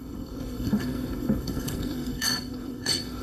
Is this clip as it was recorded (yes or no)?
no